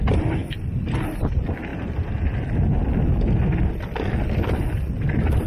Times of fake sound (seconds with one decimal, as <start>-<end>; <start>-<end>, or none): none